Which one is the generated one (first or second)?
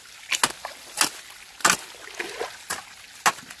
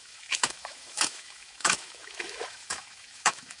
second